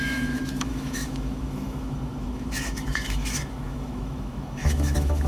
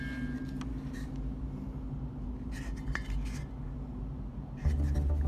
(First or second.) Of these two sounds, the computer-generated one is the first